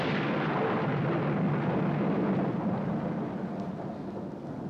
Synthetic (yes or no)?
no